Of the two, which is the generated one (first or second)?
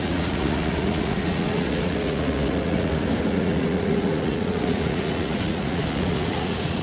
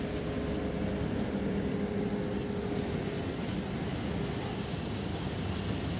first